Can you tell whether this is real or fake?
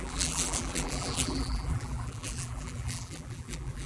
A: fake